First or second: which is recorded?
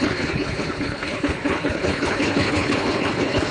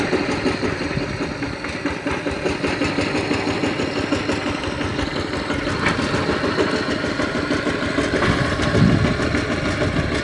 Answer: second